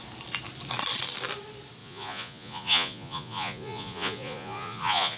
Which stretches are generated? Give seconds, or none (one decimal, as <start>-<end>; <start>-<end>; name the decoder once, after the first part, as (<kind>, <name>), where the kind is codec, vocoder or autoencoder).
1.8-5.2 (vocoder, Vocos)

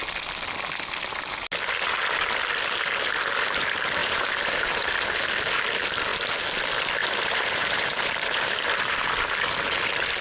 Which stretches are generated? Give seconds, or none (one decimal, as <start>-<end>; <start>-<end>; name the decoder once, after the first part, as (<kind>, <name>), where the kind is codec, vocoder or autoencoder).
4.0-4.9 (vocoder, BigVGAN v2); 7.0-9.5

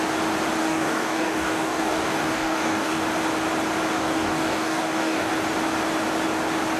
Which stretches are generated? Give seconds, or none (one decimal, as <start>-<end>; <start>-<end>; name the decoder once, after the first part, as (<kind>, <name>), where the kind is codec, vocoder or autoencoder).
0.6-3.0 (codec, DAC); 3.9-5.3

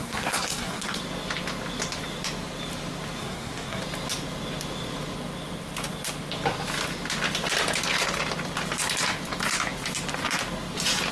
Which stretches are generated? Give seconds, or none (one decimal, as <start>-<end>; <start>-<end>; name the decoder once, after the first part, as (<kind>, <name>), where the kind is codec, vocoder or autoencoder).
0.0-1.0 (codec, SNAC); 3.2-3.8

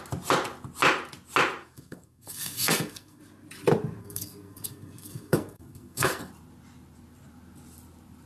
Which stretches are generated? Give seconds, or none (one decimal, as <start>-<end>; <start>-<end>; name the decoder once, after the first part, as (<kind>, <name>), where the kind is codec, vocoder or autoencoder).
1.6-3.2 (codec, SNAC); 4.0-6.3